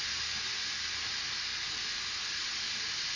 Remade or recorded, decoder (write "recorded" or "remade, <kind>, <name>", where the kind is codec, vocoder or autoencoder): recorded